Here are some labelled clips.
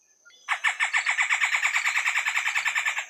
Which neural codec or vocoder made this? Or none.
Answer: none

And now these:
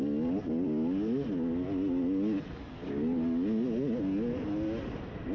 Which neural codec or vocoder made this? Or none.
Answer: none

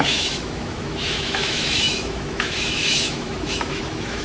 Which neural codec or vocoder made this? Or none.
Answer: autoencoder, DAC-VAE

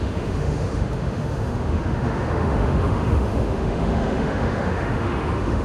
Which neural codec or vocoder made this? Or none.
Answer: autoencoder, DAC-VAE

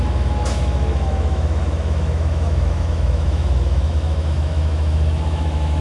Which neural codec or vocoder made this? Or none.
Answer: autoencoder, DAC-VAE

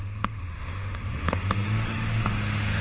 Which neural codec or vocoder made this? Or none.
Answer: autoencoder, DAC-VAE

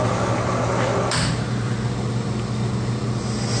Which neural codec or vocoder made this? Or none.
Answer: none